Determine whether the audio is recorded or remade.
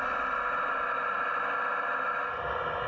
recorded